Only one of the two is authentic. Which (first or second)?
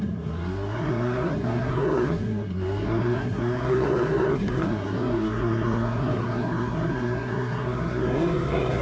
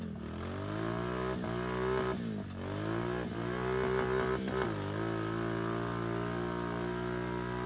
second